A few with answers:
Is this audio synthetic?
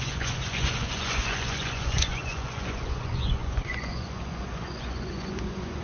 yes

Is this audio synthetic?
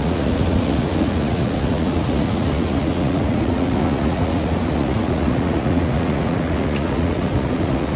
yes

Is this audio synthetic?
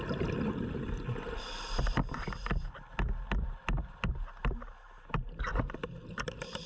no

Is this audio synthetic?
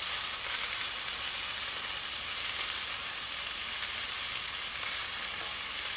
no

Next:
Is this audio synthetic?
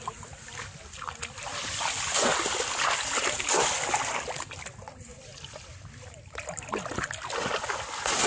no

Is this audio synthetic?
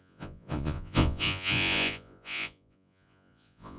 yes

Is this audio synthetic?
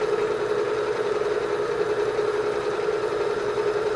no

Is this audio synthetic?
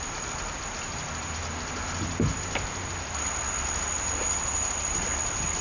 no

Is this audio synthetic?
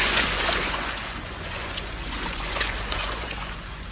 yes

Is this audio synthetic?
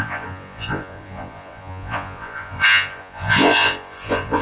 yes